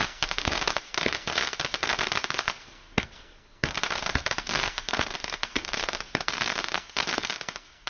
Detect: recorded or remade remade